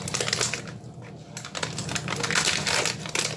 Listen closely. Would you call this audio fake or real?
real